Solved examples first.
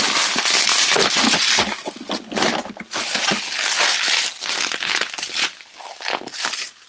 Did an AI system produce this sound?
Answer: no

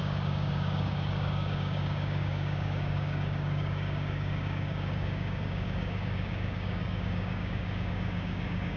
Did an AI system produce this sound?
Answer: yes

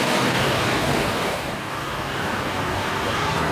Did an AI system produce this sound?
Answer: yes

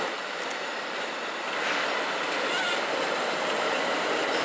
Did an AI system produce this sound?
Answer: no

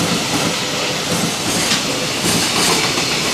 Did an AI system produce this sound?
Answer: no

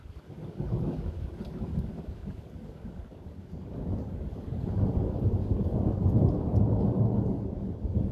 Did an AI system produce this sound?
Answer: yes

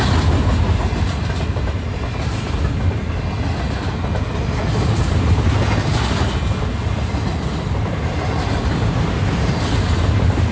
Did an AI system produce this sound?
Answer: no